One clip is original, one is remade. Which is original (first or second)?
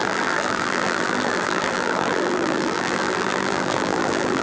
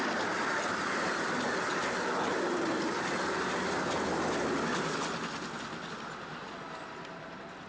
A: second